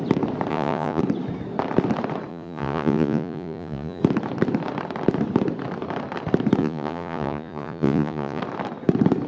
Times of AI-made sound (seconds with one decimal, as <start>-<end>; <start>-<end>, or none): 0.5-1.0; 2.3-4.0; 6.6-8.4